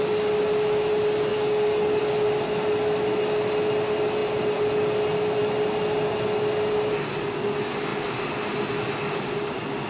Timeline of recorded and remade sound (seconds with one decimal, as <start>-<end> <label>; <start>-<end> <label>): 0.0-1.3 recorded; 1.3-2.0 remade; 2.0-9.9 recorded